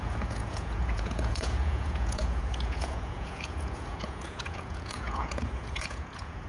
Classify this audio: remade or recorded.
remade